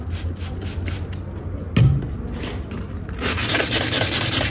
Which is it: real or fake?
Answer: real